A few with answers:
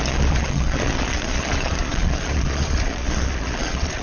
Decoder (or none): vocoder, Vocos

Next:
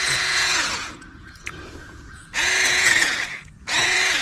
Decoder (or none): vocoder, Vocos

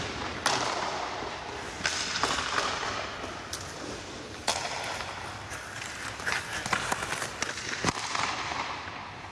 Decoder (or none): none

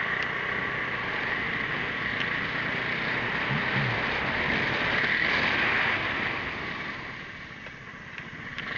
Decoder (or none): none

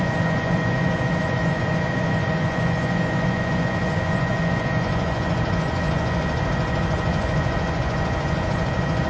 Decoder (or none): vocoder, Vocos